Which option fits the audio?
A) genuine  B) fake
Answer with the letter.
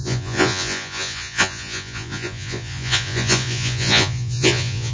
B